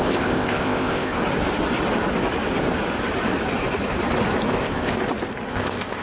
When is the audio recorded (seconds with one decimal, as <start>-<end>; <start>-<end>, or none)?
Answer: 1.2-4.5; 5.0-5.5